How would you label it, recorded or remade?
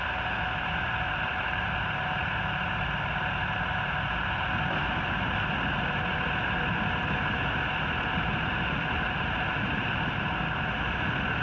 recorded